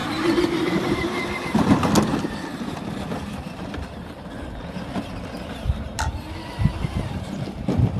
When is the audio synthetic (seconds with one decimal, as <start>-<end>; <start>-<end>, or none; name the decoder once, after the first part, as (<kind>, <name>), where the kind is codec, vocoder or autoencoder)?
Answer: 0.0-1.2 (vocoder, BigVGAN v2); 2.7-3.5

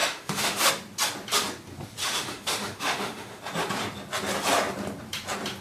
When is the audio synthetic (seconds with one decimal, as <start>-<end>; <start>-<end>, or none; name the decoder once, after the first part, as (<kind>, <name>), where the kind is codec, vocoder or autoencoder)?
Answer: 0.0-0.7 (autoencoder, DAC-VAE); 2.0-3.4

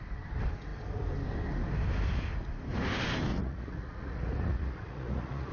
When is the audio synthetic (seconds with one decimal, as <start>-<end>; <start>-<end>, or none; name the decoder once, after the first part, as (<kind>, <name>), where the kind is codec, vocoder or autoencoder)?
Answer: 3.3-5.5 (vocoder, Vocos)

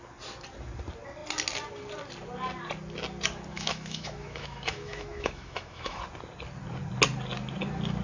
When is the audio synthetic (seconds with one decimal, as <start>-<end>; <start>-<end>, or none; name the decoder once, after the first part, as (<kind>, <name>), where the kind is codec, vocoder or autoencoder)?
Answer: 3.5-6.0 (autoencoder, DAC-VAE)

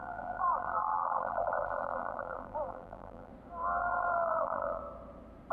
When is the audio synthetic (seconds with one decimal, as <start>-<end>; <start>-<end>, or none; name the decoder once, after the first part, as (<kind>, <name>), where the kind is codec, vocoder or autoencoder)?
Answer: 0.0-3.3 (vocoder, BigVGAN v2); 3.8-4.8

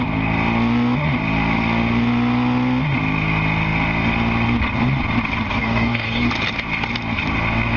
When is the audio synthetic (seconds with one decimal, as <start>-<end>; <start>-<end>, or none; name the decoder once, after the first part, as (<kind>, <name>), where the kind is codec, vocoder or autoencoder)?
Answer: 5.5-6.3 (codec, DAC)

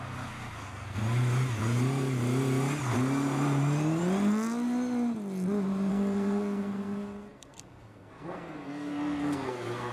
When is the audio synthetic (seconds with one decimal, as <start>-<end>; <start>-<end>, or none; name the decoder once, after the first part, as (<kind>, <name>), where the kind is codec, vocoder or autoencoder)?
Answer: 0.0-1.0 (codec, SNAC); 5.9-9.9

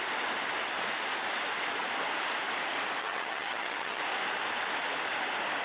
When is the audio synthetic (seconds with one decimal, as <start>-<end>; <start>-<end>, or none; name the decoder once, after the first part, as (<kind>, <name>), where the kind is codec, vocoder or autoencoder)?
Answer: 3.0-4.0 (vocoder, HiFi-GAN)